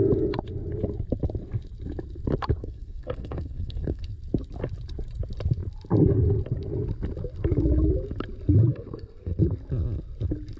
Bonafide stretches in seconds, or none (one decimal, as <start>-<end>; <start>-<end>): 0.0-2.6; 4.1-8.7; 9.3-10.6